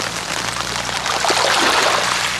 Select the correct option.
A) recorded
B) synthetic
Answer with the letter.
A